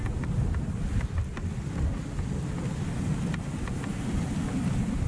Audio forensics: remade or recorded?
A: recorded